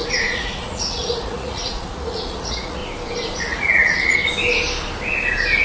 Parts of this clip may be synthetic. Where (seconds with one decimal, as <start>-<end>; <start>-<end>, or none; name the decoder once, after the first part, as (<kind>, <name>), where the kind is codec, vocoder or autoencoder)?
0.0-2.8 (vocoder, Vocos); 3.4-4.2

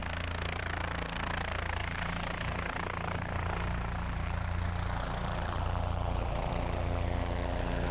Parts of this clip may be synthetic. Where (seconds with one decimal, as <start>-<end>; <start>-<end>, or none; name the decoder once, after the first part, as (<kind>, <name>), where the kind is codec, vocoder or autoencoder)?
1.8-6.5 (vocoder, BigVGAN v2)

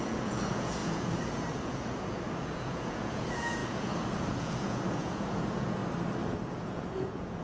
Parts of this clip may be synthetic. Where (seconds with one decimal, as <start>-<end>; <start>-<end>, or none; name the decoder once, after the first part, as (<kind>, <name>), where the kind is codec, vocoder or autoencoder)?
0.0-5.8 (vocoder, Vocos); 6.5-7.4

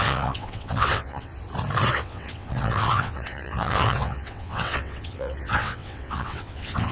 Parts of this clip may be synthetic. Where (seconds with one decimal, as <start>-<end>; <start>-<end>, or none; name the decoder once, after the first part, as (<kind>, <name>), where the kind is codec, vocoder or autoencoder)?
0.0-1.3 (vocoder, WaveNeXt); 1.9-6.9